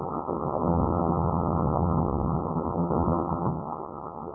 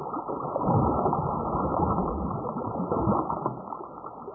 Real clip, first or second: second